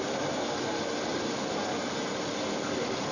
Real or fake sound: real